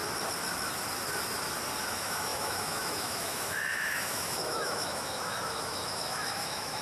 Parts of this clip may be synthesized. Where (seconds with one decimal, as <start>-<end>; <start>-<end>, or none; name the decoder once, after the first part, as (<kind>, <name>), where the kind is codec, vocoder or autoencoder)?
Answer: 1.9-6.8 (autoencoder, DAC-VAE)